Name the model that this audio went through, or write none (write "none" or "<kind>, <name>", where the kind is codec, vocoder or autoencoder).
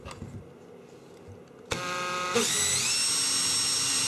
none